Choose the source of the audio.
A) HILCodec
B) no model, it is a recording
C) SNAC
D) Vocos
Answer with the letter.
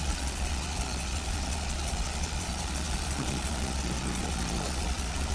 D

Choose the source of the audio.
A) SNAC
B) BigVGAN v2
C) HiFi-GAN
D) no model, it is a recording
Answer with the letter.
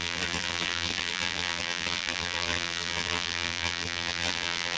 B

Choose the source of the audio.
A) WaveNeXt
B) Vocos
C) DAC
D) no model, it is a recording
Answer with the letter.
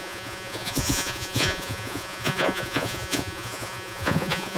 B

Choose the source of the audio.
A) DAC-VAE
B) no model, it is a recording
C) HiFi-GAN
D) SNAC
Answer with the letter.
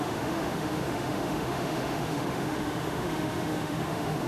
A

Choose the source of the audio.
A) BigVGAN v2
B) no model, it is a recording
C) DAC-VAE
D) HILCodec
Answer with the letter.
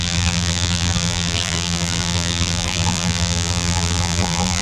A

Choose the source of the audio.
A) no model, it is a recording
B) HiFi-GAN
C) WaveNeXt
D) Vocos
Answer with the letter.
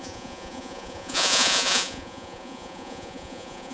D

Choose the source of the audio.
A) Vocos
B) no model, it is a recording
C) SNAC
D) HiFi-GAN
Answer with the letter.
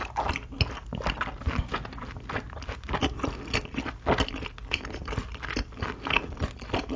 B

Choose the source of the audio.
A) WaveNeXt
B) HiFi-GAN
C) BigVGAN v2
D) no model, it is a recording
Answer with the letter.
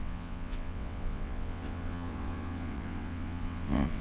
A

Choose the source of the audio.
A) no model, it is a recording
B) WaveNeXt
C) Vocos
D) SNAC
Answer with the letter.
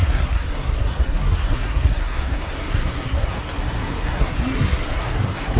D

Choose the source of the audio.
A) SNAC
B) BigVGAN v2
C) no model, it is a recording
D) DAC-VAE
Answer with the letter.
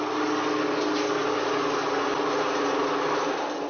C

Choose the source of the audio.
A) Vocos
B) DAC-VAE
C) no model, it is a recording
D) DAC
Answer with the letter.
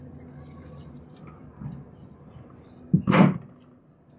C